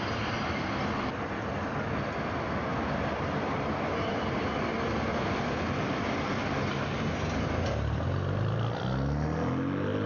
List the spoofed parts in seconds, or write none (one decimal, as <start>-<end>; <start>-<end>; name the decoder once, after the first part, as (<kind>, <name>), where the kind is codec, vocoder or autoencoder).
2.7-7.4 (vocoder, BigVGAN v2)